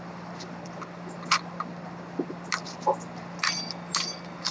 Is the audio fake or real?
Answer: real